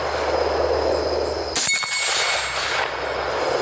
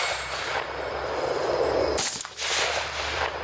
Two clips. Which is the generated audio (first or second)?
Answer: second